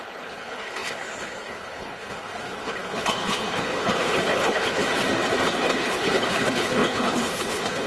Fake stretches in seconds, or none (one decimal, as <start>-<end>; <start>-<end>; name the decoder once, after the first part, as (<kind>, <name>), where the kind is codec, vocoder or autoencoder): 0.0-4.8 (codec, HILCodec); 5.7-7.9